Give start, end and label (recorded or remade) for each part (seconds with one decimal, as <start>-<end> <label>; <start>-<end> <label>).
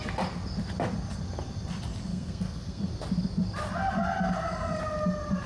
0.0-2.1 recorded; 2.1-2.9 remade; 2.9-5.5 recorded